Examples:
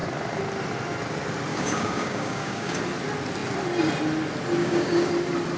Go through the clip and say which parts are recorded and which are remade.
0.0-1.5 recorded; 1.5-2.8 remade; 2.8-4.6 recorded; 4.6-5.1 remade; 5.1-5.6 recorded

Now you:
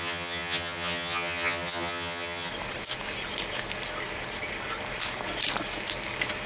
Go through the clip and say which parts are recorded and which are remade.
0.0-2.5 remade; 2.5-6.5 recorded

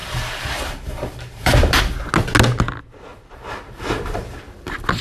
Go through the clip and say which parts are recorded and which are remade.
0.0-1.8 remade; 1.8-3.1 recorded; 3.1-5.0 remade

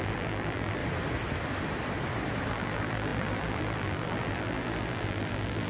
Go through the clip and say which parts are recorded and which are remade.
0.0-0.8 remade; 0.8-2.5 recorded; 2.5-5.7 remade

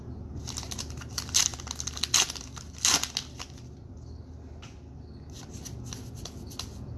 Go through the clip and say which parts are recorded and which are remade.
0.0-7.0 recorded

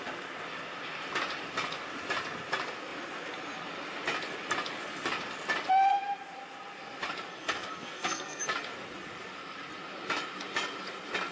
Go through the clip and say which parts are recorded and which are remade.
0.0-7.3 recorded; 7.3-8.4 remade; 8.4-11.3 recorded

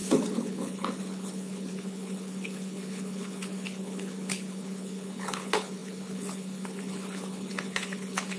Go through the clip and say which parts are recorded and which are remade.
0.0-8.4 remade

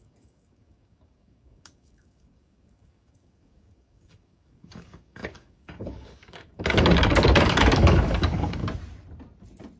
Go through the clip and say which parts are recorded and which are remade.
0.0-8.6 remade; 8.6-9.8 recorded